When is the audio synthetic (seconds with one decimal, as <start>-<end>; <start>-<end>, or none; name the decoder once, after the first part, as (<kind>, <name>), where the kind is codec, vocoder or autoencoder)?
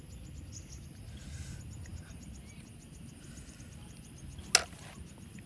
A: none